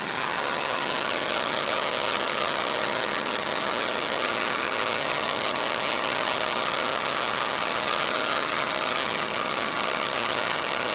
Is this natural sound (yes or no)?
no